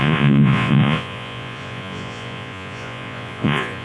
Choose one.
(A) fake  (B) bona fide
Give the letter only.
A